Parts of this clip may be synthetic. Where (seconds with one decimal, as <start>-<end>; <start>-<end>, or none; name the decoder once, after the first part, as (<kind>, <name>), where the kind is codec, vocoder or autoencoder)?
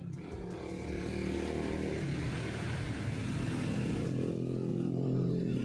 4.7-5.6 (vocoder, BigVGAN v2)